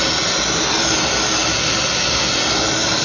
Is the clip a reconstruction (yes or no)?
no